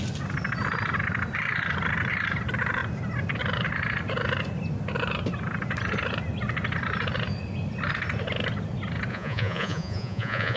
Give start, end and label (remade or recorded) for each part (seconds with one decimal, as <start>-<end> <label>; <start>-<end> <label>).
0.0-9.1 recorded; 9.1-10.6 remade